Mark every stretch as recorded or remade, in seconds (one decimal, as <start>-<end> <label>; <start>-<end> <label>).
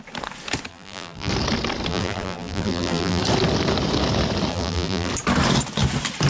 0.0-0.7 recorded; 0.7-1.3 remade; 1.3-1.9 recorded; 1.9-3.2 remade; 3.2-4.5 recorded; 4.5-5.1 remade; 5.1-6.3 recorded